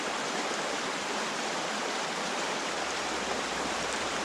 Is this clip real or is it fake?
fake